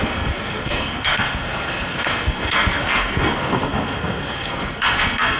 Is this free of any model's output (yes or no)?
no